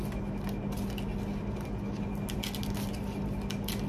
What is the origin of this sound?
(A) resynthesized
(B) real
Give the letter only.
B